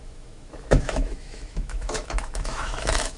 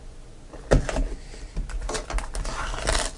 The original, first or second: second